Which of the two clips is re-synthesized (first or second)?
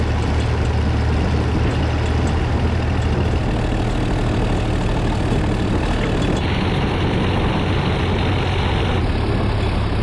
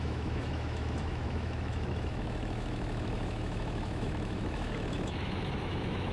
second